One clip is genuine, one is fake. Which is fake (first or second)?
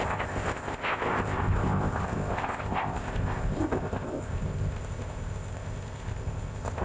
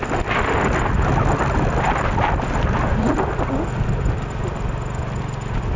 first